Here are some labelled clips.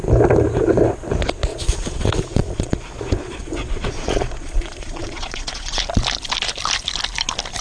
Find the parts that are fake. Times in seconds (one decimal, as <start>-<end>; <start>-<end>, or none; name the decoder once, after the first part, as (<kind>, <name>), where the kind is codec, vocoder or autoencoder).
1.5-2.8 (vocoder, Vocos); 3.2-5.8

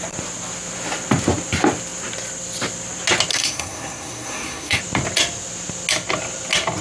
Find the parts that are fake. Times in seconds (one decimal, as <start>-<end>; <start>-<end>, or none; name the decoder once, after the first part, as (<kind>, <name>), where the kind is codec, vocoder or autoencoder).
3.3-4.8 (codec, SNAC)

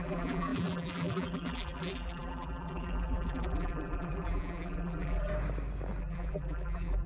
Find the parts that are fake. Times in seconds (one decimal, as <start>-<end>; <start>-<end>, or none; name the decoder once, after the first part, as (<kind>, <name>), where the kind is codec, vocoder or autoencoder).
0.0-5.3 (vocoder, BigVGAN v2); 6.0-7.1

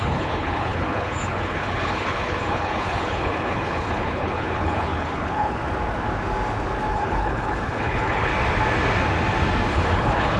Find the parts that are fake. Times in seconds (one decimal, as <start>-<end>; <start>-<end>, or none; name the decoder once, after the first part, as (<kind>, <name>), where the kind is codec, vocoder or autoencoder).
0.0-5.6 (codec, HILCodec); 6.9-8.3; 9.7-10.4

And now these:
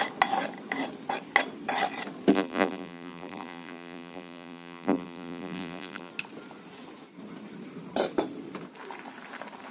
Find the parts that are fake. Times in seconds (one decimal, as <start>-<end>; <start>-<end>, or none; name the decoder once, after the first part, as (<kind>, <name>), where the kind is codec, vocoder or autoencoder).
2.3-6.1 (vocoder, BigVGAN v2)

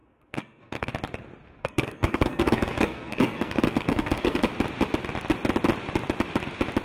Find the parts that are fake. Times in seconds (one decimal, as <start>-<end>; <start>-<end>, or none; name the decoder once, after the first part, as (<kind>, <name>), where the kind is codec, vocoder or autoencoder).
0.0-0.9 (codec, SNAC); 1.6-4.5